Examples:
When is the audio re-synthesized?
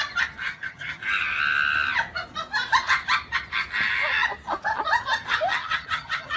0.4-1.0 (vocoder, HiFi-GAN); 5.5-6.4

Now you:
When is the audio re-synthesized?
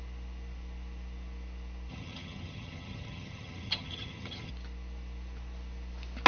1.9-4.5 (vocoder, HiFi-GAN)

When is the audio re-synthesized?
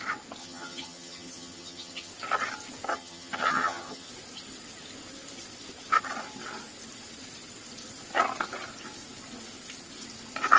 0.4-2.1 (vocoder, HiFi-GAN); 2.9-4.1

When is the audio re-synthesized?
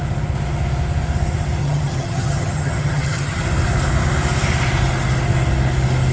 1.6-3.4 (vocoder, HiFi-GAN)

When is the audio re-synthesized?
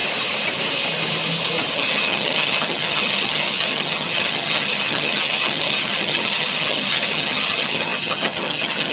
1.7-8.9 (vocoder, HiFi-GAN)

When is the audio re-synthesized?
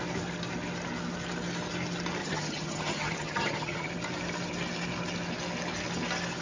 2.2-3.9 (vocoder, HiFi-GAN)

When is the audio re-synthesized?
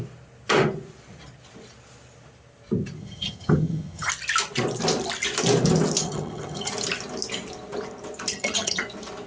3.0-4.1 (vocoder, HiFi-GAN); 6.0-6.7; 8.3-8.8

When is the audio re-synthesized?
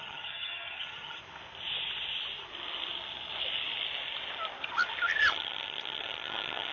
0.0-1.2 (vocoder, HiFi-GAN); 5.2-6.7